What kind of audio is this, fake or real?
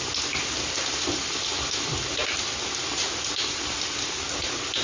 real